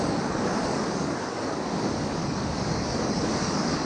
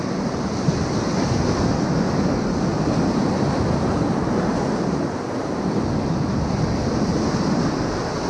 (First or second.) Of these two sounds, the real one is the second